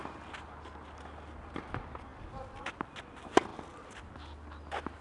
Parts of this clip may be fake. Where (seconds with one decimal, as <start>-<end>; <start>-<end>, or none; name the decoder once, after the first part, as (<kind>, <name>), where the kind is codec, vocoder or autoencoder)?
none